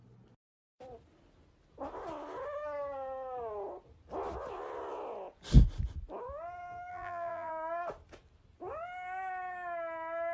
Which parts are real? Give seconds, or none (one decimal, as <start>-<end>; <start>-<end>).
0.0-6.9; 7.5-10.3